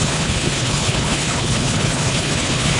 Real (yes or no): no